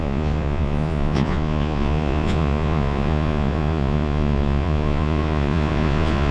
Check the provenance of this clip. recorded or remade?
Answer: remade